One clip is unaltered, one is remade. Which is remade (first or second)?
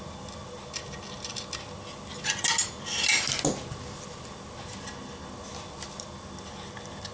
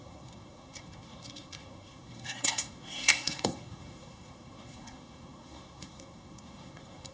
second